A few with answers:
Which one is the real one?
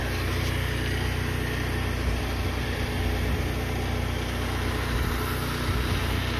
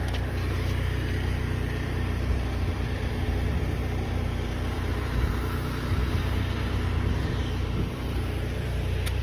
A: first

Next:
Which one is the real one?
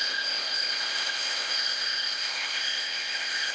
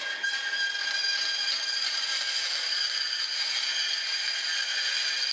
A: second